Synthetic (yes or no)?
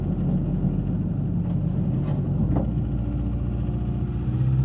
no